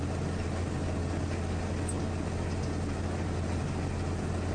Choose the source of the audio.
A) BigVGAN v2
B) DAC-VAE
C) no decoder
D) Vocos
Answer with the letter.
C